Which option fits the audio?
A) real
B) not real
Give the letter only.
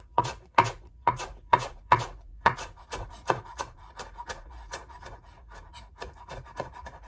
B